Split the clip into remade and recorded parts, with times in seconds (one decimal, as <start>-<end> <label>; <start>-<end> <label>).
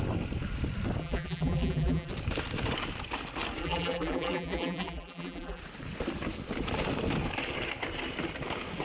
0.0-1.0 recorded; 1.0-2.1 remade; 2.1-3.6 recorded; 3.6-5.6 remade; 5.6-8.8 recorded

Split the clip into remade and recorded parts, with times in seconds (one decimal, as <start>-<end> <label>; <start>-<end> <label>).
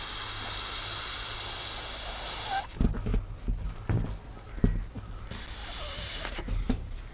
0.0-7.1 recorded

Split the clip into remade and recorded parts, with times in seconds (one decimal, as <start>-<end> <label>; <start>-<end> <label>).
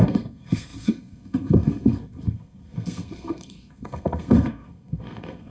0.0-5.5 remade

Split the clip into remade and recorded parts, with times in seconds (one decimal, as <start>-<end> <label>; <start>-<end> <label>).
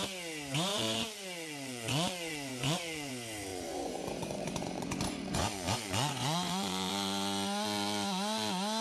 0.0-0.7 recorded; 0.7-3.1 remade; 3.1-3.5 recorded; 3.5-6.9 remade; 6.9-8.8 recorded